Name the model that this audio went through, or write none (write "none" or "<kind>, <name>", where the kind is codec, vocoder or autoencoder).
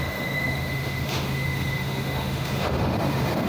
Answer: autoencoder, DAC-VAE